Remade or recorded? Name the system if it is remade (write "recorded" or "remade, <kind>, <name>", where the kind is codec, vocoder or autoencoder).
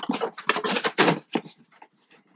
recorded